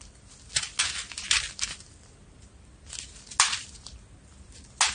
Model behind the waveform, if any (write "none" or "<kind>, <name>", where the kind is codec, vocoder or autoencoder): none